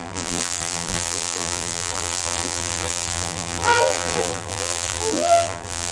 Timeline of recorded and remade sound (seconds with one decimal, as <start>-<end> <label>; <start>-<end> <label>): 0.0-5.9 remade